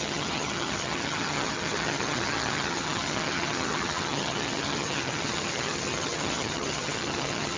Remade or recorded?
remade